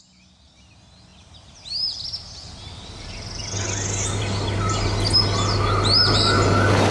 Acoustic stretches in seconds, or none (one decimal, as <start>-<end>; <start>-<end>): 0.0-6.9